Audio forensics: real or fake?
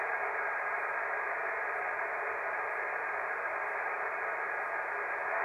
real